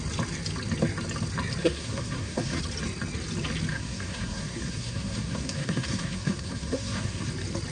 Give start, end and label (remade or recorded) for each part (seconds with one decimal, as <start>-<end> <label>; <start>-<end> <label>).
0.0-1.6 recorded; 1.6-2.6 remade; 2.6-3.7 recorded; 3.7-7.3 remade; 7.3-7.7 recorded